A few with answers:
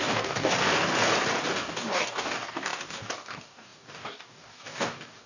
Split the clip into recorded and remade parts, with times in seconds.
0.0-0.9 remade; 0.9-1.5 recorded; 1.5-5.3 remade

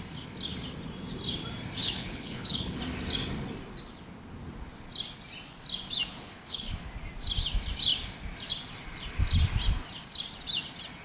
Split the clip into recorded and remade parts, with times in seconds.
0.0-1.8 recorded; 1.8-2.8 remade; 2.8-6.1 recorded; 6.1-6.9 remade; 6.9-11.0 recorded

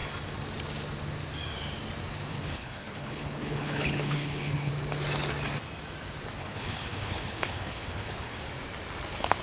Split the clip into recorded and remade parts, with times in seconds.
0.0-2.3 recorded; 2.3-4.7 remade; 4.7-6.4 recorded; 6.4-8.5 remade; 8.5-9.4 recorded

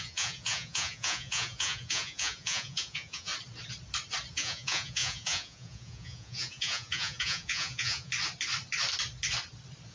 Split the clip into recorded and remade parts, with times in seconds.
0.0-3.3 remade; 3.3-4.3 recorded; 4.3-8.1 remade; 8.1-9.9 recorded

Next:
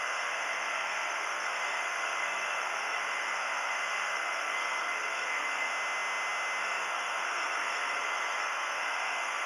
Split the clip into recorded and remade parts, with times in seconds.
0.0-5.7 remade; 5.7-6.6 recorded; 6.6-9.5 remade

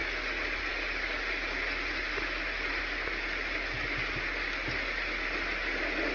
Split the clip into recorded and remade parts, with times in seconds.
0.0-6.1 recorded